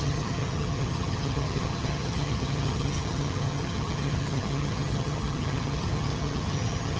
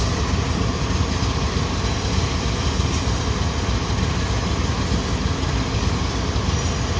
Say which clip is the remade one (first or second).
first